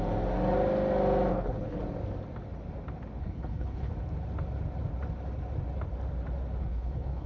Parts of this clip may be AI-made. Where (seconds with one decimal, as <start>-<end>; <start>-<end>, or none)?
1.3-1.8; 3.2-3.9; 6.6-7.3